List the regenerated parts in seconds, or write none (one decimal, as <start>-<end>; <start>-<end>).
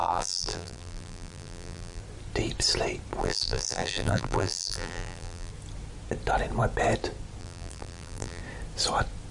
0.0-2.0; 3.2-5.5; 7.4-8.4